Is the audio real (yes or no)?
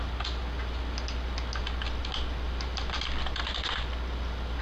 yes